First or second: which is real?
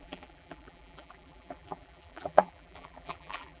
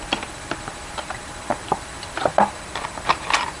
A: second